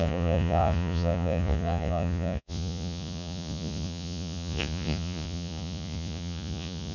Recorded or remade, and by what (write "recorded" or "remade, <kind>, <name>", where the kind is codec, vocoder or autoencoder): remade, vocoder, Vocos